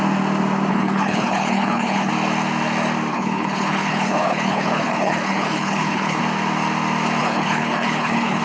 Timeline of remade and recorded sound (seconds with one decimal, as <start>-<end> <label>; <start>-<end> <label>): 0.0-0.7 recorded; 0.7-2.1 remade; 2.1-3.1 recorded; 3.1-6.2 remade; 6.2-7.2 recorded; 7.2-8.4 remade